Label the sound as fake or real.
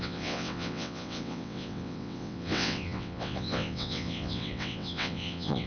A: fake